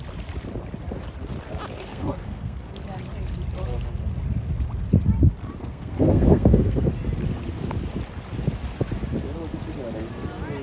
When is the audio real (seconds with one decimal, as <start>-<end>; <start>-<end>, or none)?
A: 0.0-1.9; 2.7-5.6; 6.9-10.6